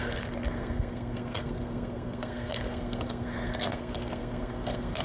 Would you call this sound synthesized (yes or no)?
yes